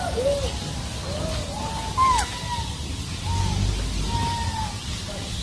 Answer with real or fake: real